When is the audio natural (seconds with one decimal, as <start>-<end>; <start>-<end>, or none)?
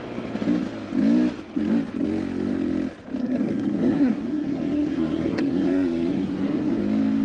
0.0-3.2; 6.8-7.2